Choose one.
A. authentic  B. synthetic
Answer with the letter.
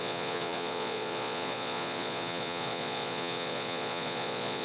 B